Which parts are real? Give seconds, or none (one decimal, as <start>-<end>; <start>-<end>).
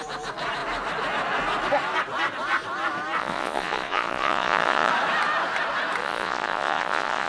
0.0-3.2; 4.9-6.0